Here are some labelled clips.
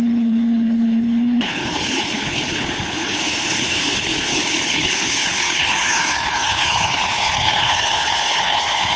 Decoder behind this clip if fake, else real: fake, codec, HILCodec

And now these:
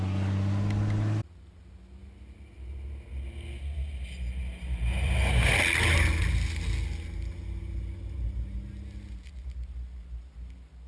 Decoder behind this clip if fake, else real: real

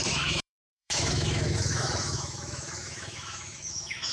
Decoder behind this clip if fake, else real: fake, autoencoder, DAC-VAE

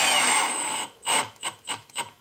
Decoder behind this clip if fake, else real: fake, autoencoder, DAC-VAE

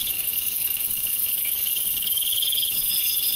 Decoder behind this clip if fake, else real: fake, codec, DAC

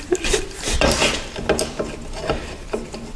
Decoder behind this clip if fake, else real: real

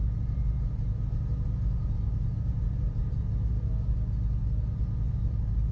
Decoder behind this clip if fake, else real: real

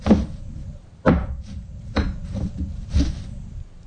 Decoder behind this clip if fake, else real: fake, vocoder, BigVGAN v2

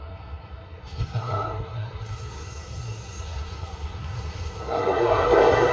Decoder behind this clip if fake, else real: fake, codec, SNAC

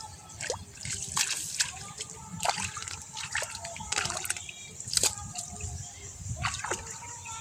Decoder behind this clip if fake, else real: real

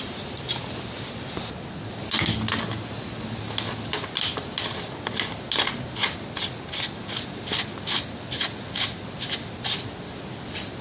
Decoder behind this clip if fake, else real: real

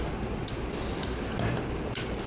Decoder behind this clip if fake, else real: fake, vocoder, BigVGAN v2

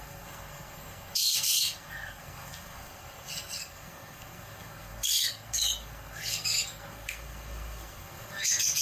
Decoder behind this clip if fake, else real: fake, codec, SNAC